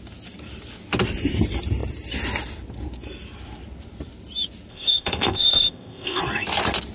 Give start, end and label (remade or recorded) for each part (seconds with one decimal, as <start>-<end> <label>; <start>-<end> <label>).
0.0-4.7 recorded; 4.7-6.2 remade; 6.2-6.9 recorded